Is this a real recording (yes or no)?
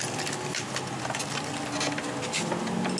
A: yes